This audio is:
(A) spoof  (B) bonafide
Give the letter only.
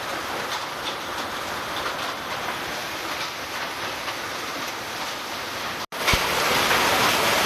B